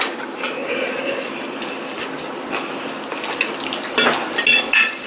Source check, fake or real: real